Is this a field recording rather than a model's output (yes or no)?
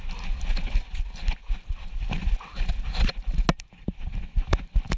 yes